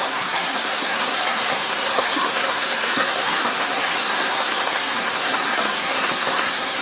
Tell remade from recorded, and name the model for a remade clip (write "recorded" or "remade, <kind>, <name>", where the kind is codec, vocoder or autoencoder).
remade, codec, SNAC